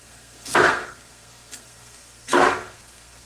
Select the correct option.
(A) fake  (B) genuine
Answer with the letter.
A